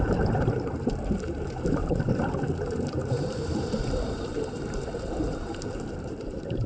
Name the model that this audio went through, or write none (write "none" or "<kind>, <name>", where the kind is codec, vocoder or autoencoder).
vocoder, BigVGAN v2